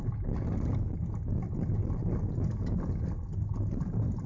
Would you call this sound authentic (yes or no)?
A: yes